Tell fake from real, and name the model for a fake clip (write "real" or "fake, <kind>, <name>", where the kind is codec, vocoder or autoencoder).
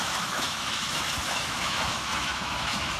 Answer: fake, autoencoder, DAC-VAE